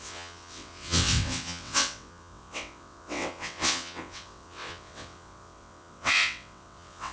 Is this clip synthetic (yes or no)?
yes